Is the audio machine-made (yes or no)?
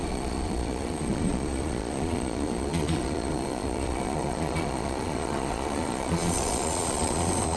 yes